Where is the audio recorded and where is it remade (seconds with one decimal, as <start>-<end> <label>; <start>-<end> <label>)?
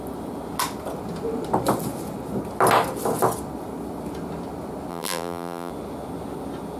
0.0-4.9 recorded; 4.9-5.7 remade; 5.7-6.8 recorded